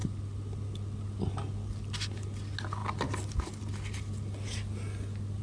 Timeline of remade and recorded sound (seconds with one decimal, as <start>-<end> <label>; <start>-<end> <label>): 0.0-5.4 recorded